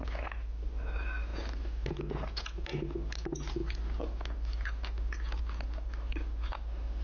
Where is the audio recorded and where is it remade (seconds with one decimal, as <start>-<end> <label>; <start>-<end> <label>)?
0.0-7.0 recorded